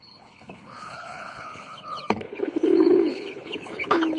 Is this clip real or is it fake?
fake